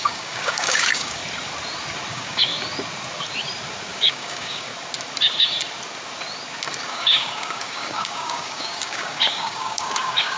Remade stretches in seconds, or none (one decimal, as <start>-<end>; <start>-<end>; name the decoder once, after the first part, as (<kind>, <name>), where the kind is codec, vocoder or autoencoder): 0.0-1.2 (codec, DAC); 2.1-2.5; 3.9-4.7; 6.9-10.4